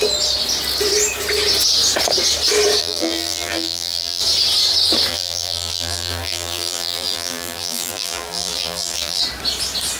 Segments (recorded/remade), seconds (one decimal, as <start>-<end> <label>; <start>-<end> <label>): 0.0-2.8 recorded; 2.8-4.2 remade; 4.2-5.1 recorded; 5.1-9.2 remade; 9.2-10.0 recorded